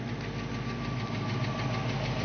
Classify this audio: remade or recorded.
recorded